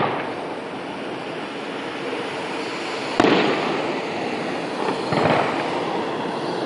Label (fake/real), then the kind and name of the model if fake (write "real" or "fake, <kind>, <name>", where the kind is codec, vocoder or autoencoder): real